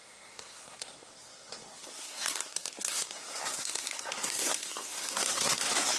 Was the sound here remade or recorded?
remade